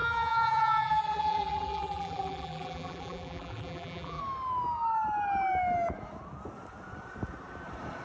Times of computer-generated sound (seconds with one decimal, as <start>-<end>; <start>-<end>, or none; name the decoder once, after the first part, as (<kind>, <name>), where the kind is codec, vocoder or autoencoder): 0.0-4.2 (vocoder, BigVGAN v2)